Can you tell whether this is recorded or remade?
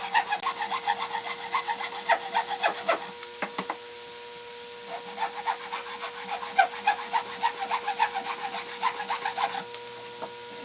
recorded